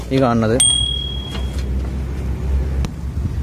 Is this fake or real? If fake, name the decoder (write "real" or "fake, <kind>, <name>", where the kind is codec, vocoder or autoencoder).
real